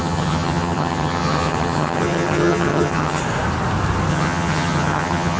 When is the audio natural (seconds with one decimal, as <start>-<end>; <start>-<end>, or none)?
3.2-4.1